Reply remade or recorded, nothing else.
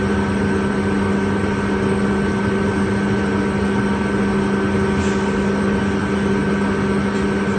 recorded